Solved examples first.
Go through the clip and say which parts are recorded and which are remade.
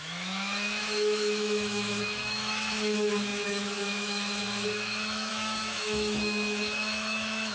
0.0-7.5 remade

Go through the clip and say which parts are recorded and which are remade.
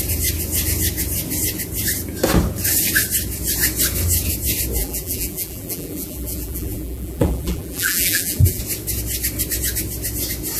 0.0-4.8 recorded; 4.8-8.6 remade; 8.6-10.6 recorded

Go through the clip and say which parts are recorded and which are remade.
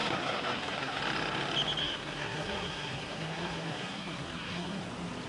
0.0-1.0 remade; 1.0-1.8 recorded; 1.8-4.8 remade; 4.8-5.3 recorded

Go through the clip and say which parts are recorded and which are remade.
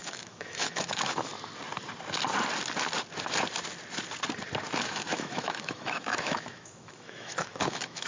0.0-1.3 remade; 1.3-4.8 recorded; 4.8-8.1 remade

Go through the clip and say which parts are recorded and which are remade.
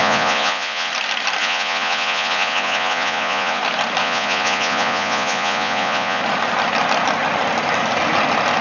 0.0-0.9 remade; 0.9-1.4 recorded; 1.4-3.6 remade; 3.6-4.0 recorded; 4.0-6.2 remade; 6.2-8.6 recorded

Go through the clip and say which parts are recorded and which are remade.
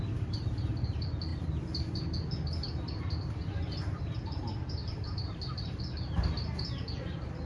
0.0-4.8 recorded; 4.8-5.8 remade; 5.8-7.5 recorded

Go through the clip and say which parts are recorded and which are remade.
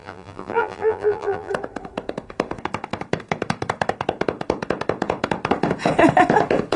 0.0-1.5 remade; 1.5-6.8 recorded